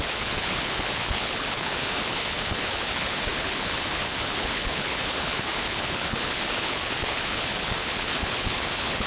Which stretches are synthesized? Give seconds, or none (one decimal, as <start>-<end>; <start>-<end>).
0.0-9.1